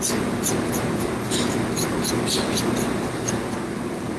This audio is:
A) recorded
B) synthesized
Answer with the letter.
A